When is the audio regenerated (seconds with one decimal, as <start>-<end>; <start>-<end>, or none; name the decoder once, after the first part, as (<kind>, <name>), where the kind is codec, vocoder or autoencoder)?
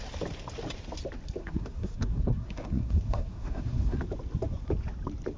1.4-4.0 (codec, SNAC)